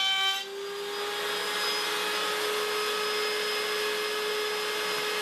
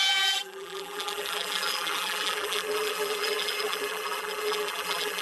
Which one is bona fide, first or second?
first